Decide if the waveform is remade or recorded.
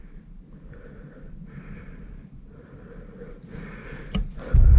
recorded